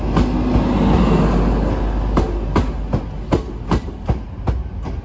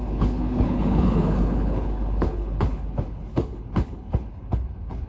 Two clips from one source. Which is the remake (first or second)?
second